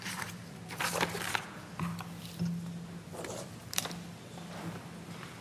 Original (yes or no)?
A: yes